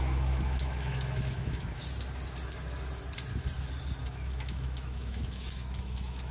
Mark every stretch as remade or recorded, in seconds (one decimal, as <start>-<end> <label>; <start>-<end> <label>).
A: 0.0-1.8 remade; 1.8-4.0 recorded; 4.0-6.3 remade